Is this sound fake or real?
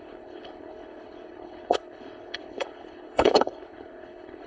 fake